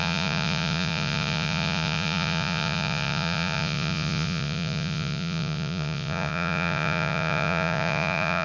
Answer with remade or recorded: remade